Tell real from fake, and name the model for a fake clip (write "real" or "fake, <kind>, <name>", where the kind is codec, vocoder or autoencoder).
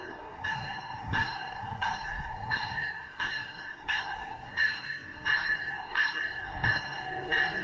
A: fake, codec, SNAC